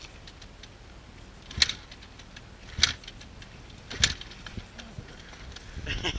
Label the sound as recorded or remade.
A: recorded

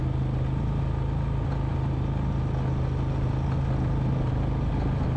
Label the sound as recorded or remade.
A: recorded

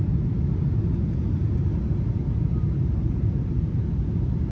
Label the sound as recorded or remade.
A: recorded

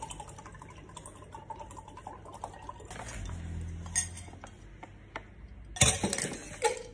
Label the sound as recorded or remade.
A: recorded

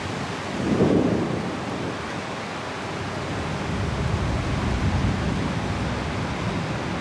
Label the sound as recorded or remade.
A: recorded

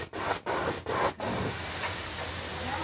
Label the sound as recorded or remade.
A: recorded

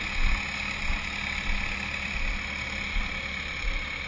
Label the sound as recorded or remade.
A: recorded